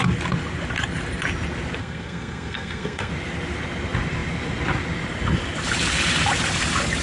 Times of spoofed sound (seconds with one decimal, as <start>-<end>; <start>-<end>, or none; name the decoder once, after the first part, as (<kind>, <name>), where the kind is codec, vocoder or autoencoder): 1.8-3.1 (codec, SNAC)